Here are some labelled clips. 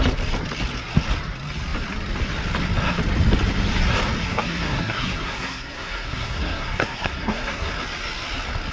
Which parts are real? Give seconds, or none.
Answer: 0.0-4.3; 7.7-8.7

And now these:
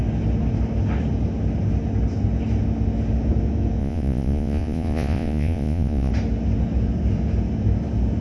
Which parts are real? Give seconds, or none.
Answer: 0.0-3.8; 6.1-8.2